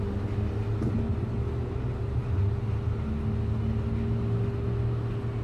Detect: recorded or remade recorded